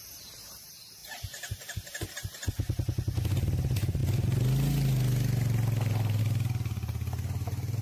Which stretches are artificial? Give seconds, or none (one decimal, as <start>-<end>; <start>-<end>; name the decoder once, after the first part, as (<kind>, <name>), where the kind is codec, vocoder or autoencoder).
1.0-2.1 (vocoder, BigVGAN v2)